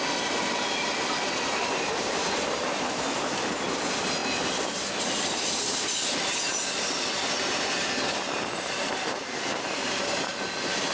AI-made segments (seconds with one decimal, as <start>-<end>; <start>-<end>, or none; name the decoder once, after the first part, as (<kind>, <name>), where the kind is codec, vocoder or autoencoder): none